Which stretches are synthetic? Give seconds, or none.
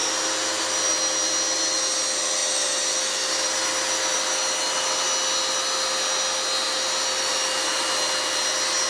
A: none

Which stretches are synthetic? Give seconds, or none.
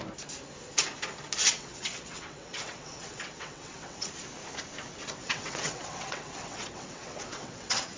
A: 1.4-4.1 (vocoder, WaveNeXt); 5.2-8.0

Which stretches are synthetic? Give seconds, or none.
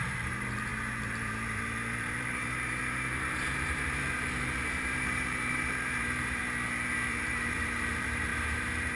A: 0.0-6.4 (vocoder, BigVGAN v2); 7.1-9.0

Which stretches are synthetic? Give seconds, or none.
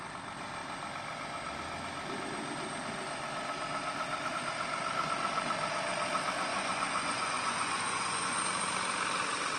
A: 6.5-8.4 (vocoder, Vocos)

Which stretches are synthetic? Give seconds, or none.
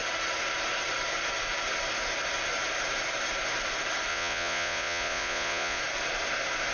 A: 4.1-5.8 (vocoder, Vocos)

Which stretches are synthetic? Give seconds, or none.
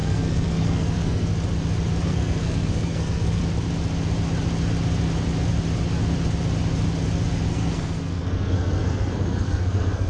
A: 0.0-1.3 (codec, SNAC); 2.0-3.4; 7.5-10.1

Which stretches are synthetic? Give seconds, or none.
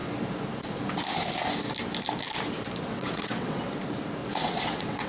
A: 2.9-3.7 (vocoder, WaveNeXt); 4.2-5.1